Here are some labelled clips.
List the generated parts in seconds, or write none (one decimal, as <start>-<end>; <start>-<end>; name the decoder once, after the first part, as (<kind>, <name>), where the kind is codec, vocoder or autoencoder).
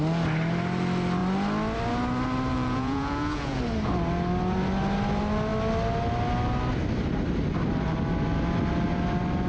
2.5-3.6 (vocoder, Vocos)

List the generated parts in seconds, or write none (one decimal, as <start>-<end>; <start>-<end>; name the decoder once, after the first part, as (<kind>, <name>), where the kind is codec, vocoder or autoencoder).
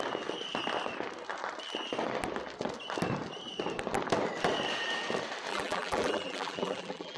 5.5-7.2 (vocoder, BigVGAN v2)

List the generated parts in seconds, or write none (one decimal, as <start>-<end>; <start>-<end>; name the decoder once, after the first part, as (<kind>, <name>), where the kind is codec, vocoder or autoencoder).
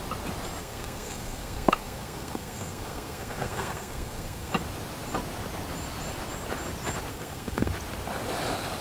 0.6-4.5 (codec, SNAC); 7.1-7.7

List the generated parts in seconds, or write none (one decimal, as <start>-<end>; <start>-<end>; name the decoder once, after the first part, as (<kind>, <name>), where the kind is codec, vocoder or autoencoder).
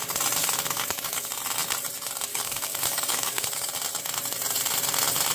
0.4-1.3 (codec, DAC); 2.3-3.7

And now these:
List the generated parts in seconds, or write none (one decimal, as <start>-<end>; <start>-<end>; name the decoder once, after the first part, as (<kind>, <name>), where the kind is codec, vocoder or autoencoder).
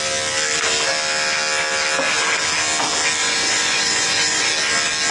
3.2-4.5 (vocoder, Vocos)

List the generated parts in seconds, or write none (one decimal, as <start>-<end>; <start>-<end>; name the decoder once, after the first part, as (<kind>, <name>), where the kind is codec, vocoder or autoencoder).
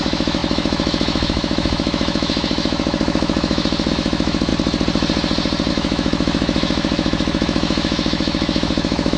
0.0-4.5 (autoencoder, DAC-VAE); 5.7-9.2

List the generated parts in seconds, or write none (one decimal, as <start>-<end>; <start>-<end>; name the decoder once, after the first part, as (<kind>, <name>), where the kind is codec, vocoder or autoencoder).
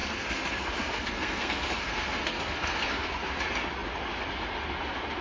0.0-3.1 (codec, SNAC)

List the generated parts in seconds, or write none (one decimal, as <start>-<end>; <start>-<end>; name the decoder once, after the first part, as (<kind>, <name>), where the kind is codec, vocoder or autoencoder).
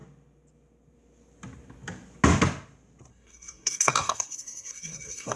3.1-5.4 (codec, SNAC)